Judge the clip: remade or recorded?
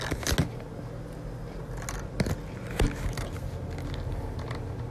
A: recorded